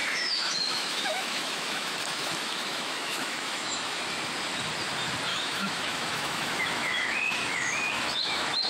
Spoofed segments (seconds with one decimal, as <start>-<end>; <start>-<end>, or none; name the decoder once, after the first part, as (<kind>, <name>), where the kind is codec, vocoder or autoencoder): 0.0-4.0 (autoencoder, DAC-VAE); 5.3-8.7